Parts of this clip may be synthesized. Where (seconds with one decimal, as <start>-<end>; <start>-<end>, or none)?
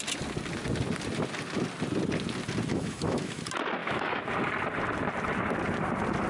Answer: 2.7-3.4; 3.8-4.3